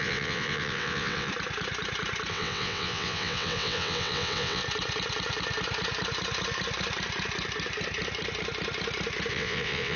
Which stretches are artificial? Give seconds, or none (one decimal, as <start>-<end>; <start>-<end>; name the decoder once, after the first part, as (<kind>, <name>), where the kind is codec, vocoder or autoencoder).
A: 0.0-1.3 (vocoder, WaveNeXt); 2.3-4.6; 9.3-10.0